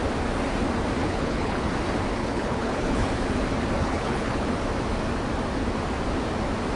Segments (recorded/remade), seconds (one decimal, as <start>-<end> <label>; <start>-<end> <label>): 0.0-1.0 recorded; 1.0-1.7 remade; 1.7-2.2 recorded; 2.2-3.1 remade; 3.1-3.8 recorded; 3.8-4.5 remade; 4.5-6.8 recorded